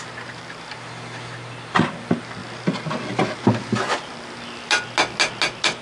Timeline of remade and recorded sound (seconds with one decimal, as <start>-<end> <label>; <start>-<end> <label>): 0.0-5.8 recorded